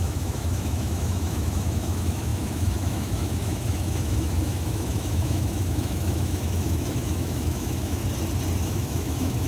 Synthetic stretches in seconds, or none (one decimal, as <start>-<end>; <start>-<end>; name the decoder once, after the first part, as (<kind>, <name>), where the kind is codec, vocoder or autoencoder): 0.0-8.0 (autoencoder, DAC-VAE); 8.6-9.5